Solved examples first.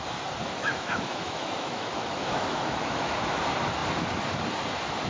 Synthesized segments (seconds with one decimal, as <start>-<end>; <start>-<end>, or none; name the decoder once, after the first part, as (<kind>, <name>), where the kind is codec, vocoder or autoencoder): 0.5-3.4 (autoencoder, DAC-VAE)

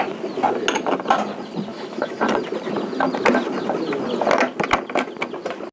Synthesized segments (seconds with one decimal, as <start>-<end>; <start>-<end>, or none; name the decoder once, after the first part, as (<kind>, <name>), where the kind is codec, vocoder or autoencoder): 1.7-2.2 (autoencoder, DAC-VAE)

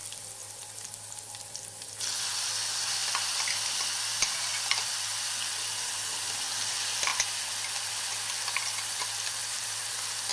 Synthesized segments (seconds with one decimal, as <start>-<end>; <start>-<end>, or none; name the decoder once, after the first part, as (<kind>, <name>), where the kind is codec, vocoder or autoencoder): none

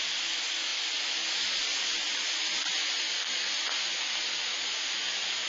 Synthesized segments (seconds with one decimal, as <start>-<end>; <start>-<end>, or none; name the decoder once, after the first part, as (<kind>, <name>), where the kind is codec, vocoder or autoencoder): none

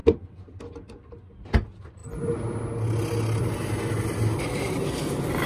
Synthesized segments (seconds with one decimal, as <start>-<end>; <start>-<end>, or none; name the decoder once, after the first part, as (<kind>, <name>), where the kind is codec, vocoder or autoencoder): none

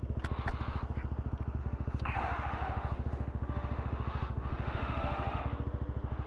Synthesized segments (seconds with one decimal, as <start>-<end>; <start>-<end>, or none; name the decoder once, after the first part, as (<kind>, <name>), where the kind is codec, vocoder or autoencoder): 1.6-5.4 (autoencoder, DAC-VAE)

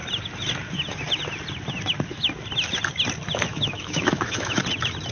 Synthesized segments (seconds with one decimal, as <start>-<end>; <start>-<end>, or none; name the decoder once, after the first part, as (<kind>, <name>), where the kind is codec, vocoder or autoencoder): 3.5-4.6 (autoencoder, DAC-VAE)